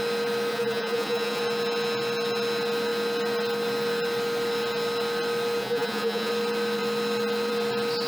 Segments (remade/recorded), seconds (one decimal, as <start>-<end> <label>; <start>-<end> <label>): 0.0-0.5 recorded; 0.5-1.4 remade; 1.4-5.6 recorded; 5.6-6.3 remade; 6.3-8.1 recorded